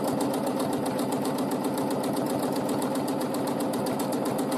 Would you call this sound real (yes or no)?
no